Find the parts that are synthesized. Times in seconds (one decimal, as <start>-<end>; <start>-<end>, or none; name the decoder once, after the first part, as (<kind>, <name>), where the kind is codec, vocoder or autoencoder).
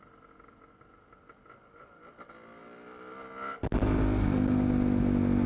none